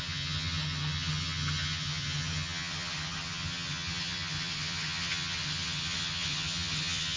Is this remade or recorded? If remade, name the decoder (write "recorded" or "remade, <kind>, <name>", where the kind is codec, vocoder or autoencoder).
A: remade, vocoder, HiFi-GAN